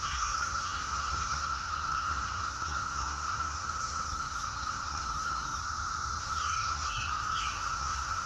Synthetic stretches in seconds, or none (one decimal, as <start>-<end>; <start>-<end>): 0.0-5.6; 6.2-8.3